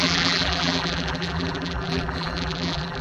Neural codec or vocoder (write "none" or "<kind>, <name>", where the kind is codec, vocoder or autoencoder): vocoder, BigVGAN v2